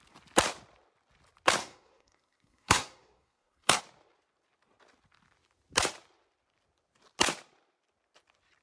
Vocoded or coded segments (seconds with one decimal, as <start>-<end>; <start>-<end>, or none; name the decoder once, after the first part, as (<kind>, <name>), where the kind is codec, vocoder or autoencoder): 1.6-3.8 (codec, SNAC)